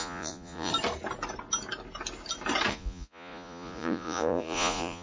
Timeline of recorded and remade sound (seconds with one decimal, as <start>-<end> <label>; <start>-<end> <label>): 0.0-0.7 remade; 0.7-2.7 recorded; 2.7-5.0 remade